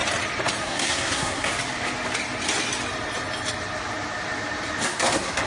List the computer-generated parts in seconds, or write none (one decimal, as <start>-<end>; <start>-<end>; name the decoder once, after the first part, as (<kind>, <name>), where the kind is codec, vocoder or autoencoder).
0.6-1.5 (codec, SNAC); 4.8-5.5